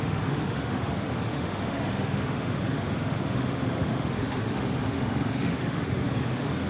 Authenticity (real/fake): fake